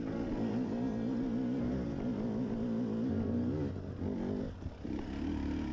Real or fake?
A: real